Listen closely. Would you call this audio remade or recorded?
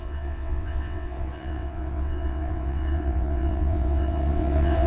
remade